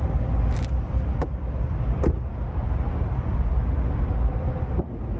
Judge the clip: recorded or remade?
recorded